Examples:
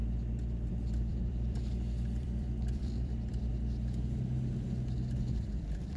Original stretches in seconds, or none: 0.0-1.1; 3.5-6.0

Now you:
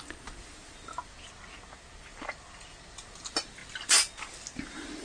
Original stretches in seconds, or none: 0.0-2.1; 2.8-5.0

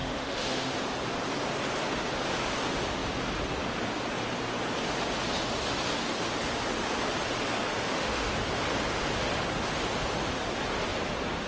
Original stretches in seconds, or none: 0.7-7.7; 8.3-11.5

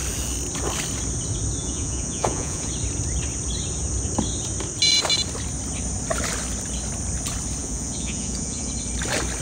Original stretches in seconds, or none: 0.0-1.6; 2.7-7.6; 8.7-9.4

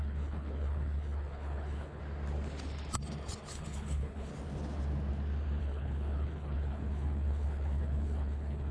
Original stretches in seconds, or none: 2.0-3.5; 4.3-5.6

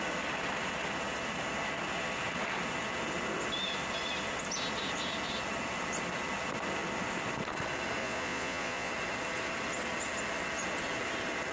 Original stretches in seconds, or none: 0.0-8.0; 8.9-11.5